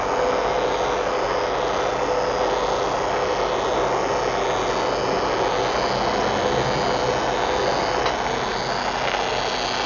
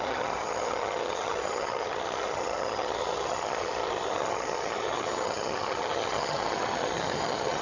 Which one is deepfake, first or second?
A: second